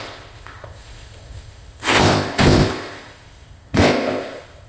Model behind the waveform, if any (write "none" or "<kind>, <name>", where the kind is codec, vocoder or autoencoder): codec, ZipCodec